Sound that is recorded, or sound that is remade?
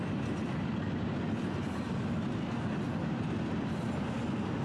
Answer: recorded